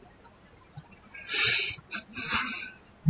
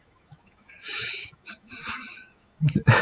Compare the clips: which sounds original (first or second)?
first